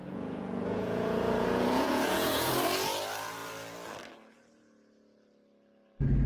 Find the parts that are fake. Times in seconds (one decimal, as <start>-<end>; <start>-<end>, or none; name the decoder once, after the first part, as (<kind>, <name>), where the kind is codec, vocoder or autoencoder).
0.0-2.5 (vocoder, Vocos)